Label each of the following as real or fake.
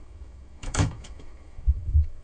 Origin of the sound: fake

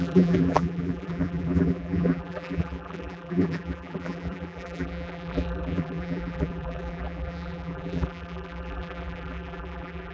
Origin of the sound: fake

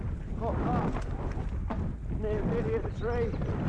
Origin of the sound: real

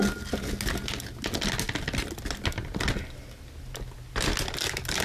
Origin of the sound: real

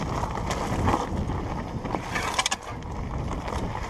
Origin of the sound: real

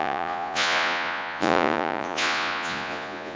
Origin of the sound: fake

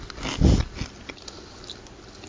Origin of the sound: real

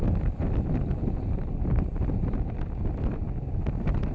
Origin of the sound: fake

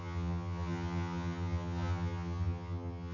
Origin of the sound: fake